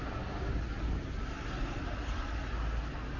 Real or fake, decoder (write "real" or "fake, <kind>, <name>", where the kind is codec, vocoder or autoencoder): real